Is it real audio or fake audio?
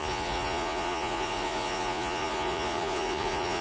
fake